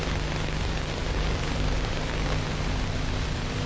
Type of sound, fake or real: fake